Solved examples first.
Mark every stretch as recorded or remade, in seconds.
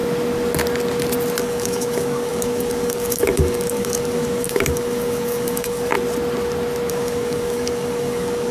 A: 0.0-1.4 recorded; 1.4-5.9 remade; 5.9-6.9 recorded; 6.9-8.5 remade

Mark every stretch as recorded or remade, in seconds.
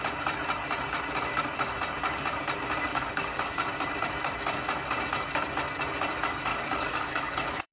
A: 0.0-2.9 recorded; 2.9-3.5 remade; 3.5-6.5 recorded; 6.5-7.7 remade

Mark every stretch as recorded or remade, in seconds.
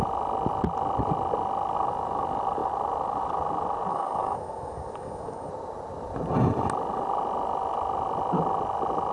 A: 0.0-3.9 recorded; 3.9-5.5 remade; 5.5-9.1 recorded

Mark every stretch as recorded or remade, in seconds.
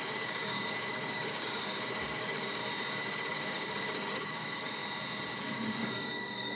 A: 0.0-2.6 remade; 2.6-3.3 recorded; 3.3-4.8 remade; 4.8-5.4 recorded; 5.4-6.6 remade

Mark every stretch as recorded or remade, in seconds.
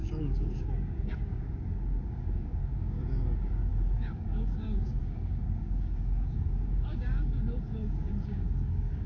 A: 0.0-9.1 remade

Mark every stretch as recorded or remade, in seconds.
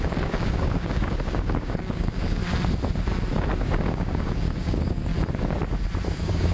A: 0.0-2.4 remade; 2.4-3.9 recorded; 3.9-5.1 remade; 5.1-6.1 recorded; 6.1-6.5 remade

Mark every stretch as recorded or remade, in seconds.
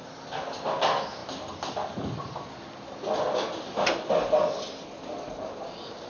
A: 0.0-6.1 recorded